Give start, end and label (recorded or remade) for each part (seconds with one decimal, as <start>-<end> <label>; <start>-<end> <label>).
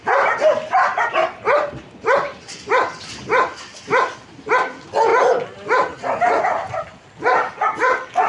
0.0-8.3 recorded